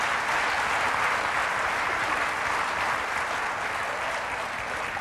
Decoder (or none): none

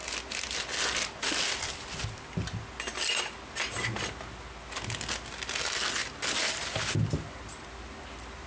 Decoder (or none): none